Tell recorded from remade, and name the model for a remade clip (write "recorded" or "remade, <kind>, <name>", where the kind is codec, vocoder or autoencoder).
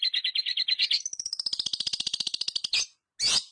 recorded